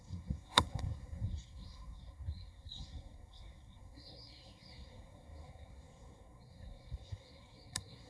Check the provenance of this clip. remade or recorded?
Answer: remade